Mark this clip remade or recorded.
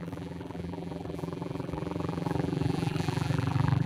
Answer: remade